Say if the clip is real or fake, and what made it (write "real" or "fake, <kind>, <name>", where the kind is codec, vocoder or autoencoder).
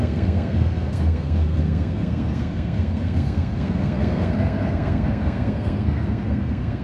fake, codec, SNAC